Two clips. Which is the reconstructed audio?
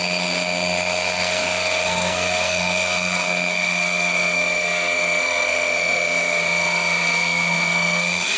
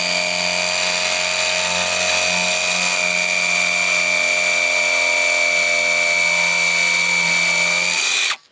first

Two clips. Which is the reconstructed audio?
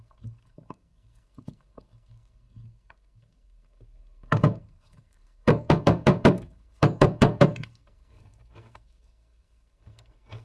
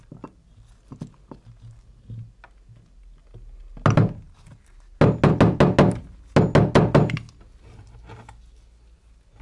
first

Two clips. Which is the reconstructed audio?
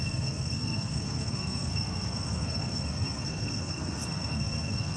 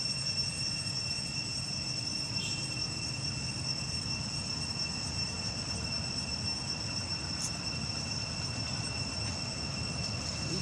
first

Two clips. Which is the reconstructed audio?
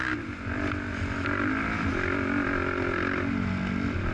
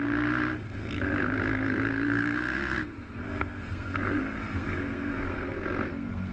second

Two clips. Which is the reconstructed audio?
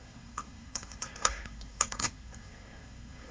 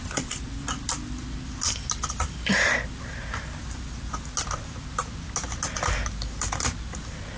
first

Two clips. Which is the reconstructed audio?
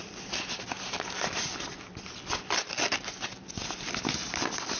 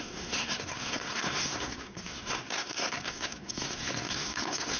second